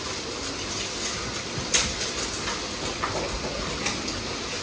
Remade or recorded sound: recorded